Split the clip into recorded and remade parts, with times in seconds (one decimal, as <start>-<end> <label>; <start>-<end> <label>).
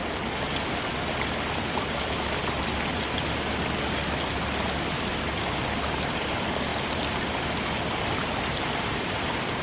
0.0-9.6 recorded